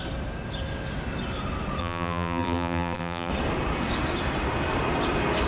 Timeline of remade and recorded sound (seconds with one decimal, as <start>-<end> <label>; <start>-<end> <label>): 0.0-1.8 recorded; 1.8-3.3 remade; 3.3-5.5 recorded